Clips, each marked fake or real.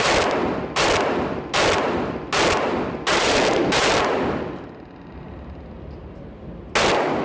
real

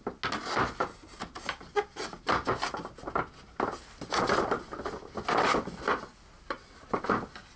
real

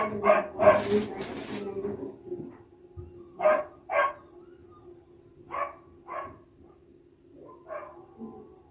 real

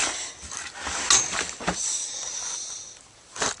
real